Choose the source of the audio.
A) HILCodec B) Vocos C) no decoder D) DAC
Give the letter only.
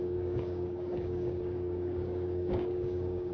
D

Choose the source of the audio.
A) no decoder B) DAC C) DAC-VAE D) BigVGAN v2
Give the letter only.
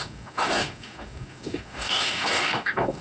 B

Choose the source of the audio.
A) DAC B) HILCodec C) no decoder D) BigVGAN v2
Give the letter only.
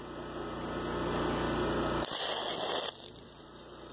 C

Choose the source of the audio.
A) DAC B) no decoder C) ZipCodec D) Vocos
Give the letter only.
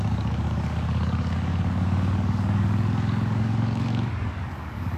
A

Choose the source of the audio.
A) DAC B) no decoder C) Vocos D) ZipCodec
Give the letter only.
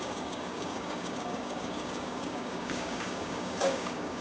A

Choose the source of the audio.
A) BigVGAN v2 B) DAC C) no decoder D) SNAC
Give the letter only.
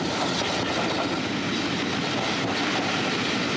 C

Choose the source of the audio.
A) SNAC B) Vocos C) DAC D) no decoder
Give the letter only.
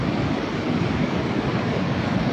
C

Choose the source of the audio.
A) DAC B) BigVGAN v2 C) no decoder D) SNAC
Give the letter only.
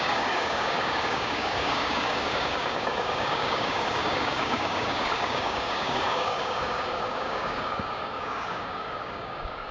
A